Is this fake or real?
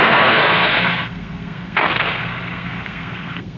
fake